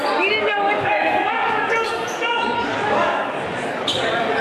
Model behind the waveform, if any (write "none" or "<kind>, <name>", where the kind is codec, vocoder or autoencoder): codec, DAC